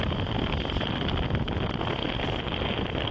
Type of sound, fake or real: real